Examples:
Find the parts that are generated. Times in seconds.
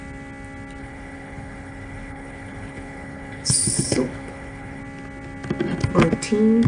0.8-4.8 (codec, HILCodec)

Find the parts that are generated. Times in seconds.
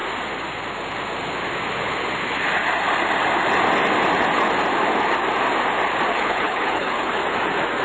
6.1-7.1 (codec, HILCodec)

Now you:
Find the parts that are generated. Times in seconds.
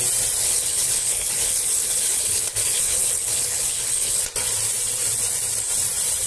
0.4-4.2 (codec, HILCodec)